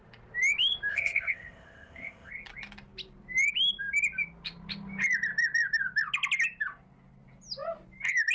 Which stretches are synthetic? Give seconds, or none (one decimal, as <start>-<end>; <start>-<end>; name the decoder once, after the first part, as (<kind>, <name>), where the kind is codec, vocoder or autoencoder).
0.9-2.3 (codec, ZipCodec)